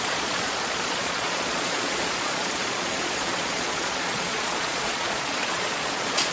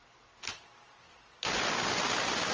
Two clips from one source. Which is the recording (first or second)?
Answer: second